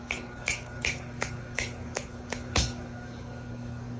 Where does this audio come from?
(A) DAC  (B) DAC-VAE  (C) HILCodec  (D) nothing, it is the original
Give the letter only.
A